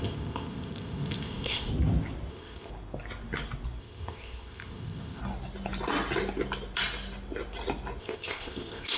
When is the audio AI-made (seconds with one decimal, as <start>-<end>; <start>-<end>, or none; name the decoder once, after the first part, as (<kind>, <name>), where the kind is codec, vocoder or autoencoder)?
0.0-1.7 (codec, ZipCodec); 2.3-2.7; 3.8-5.2; 8.0-9.0